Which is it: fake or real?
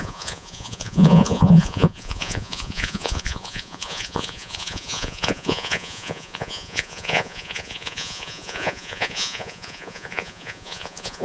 fake